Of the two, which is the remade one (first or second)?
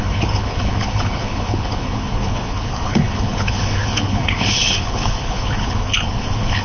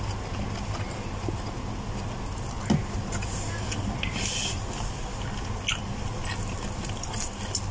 first